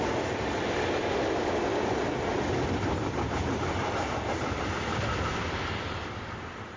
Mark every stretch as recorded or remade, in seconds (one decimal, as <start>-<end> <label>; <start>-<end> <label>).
0.0-6.8 recorded